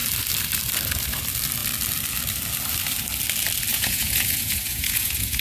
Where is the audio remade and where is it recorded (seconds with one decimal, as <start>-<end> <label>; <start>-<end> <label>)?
0.0-3.7 recorded; 3.7-5.4 remade